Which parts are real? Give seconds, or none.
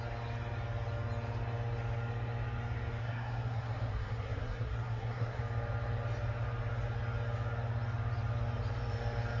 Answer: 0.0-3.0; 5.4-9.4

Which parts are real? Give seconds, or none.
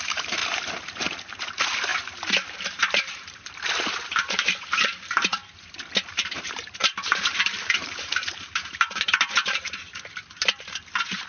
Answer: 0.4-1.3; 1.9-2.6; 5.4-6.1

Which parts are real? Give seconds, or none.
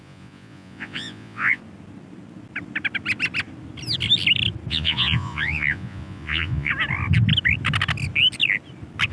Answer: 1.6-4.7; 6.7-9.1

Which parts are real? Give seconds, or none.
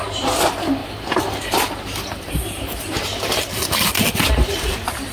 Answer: 0.0-0.8; 3.9-5.1